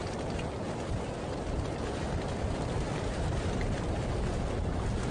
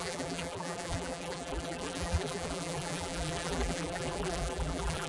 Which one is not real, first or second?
second